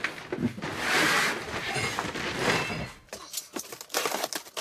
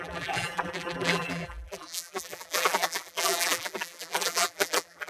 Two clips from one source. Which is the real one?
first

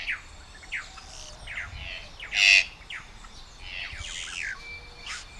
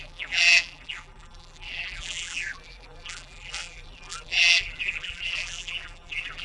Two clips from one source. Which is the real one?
first